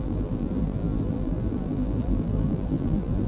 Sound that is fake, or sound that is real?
fake